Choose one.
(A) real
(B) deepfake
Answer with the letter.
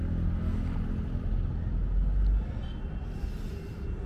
A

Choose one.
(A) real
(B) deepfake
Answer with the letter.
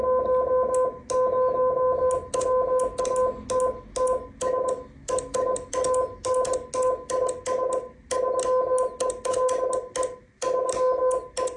A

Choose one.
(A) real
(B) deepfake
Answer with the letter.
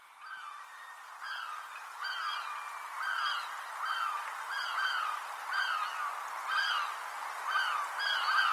A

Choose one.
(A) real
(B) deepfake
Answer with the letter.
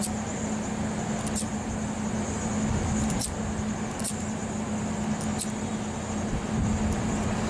A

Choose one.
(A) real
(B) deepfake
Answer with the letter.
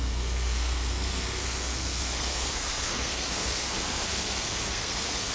B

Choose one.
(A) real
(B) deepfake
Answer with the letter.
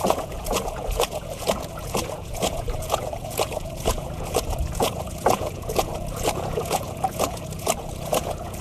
B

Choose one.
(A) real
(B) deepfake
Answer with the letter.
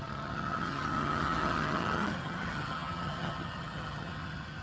B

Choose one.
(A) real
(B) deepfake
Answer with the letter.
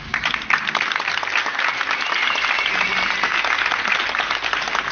A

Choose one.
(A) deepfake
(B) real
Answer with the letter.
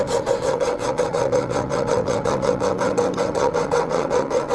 A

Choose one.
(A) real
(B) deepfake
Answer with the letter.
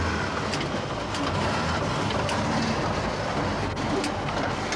A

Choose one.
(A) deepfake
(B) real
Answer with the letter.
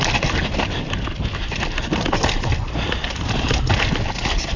B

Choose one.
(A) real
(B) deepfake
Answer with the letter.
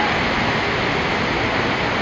A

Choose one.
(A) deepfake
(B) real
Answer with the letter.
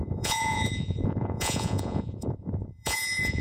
A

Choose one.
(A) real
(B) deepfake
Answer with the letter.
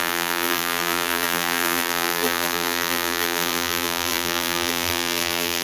B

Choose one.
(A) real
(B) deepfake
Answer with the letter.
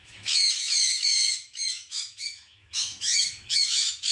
B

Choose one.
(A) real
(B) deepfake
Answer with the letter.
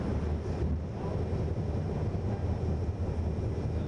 A